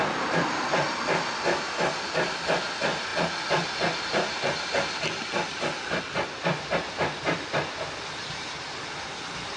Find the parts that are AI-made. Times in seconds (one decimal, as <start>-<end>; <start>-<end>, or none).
none